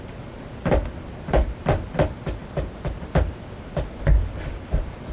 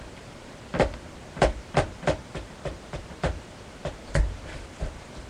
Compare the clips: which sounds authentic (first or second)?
first